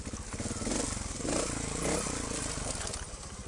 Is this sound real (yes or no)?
yes